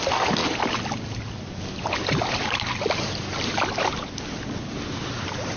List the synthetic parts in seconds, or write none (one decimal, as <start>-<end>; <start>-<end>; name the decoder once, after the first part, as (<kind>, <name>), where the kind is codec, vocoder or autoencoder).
none